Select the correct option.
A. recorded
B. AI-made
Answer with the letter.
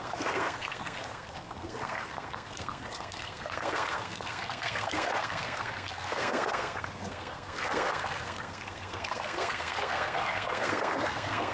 B